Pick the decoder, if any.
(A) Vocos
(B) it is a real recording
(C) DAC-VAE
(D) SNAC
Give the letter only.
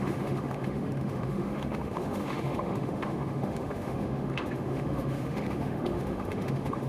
C